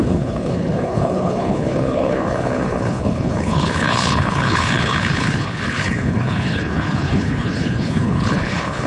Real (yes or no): no